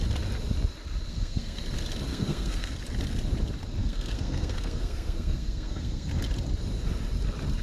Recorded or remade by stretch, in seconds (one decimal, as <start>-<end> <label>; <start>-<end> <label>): 0.0-1.1 recorded; 1.1-1.6 remade; 1.6-2.1 recorded; 2.1-2.7 remade; 2.7-3.8 recorded; 3.8-6.1 remade; 6.1-7.6 recorded